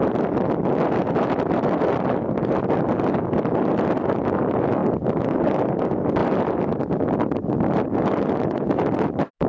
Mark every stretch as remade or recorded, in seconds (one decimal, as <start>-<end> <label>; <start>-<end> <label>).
0.0-9.5 recorded

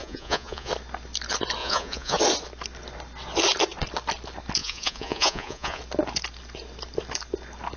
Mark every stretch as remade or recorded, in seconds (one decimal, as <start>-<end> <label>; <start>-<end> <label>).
0.0-0.7 remade; 0.7-1.6 recorded; 1.6-2.2 remade; 2.2-4.6 recorded; 4.6-5.8 remade; 5.8-7.8 recorded

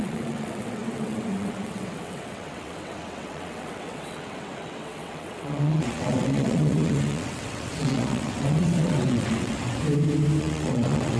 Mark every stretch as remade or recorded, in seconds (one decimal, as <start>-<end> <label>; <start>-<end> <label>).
0.0-9.8 remade; 9.8-10.4 recorded; 10.4-11.2 remade